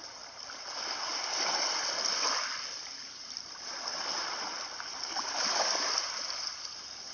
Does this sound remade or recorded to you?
recorded